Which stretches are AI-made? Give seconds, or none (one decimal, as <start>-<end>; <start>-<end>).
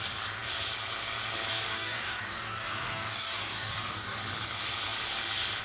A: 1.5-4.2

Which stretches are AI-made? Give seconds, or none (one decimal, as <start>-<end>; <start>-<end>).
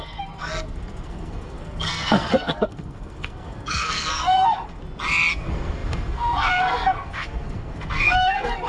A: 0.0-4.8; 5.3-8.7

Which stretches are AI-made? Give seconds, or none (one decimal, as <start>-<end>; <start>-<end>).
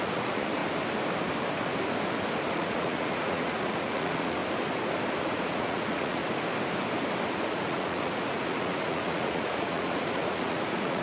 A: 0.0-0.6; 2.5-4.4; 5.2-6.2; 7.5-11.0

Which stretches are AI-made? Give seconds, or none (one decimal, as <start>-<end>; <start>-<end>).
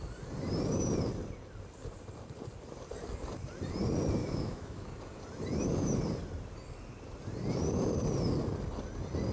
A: 4.2-4.9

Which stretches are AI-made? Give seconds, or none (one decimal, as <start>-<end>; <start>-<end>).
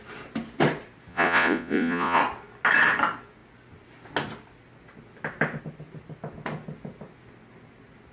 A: 1.1-2.2